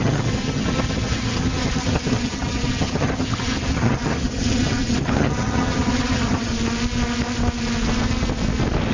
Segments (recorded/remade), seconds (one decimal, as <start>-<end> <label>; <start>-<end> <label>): 0.0-6.5 remade; 6.5-8.9 recorded